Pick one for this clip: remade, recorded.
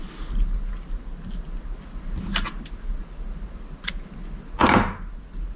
recorded